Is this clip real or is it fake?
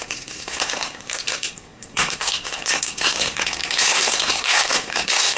fake